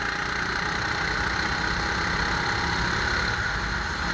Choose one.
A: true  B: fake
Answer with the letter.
A